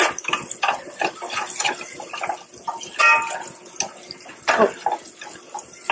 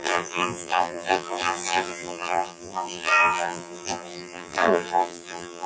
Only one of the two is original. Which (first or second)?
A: first